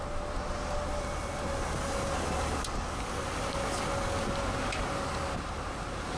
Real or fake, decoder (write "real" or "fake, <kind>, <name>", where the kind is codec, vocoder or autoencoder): real